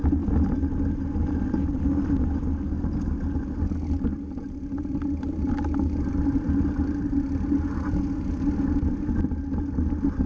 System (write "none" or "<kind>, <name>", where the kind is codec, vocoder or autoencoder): none